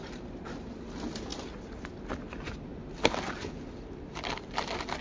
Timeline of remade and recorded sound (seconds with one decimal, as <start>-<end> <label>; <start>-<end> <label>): 0.0-5.0 recorded